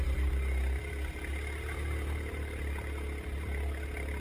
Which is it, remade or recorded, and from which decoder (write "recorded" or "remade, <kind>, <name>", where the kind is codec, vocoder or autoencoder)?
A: recorded